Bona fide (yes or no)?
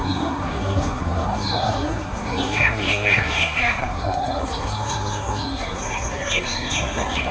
no